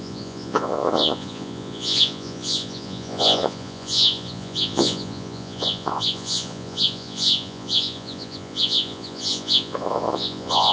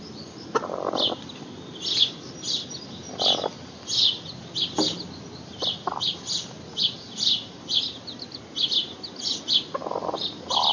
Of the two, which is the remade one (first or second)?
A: first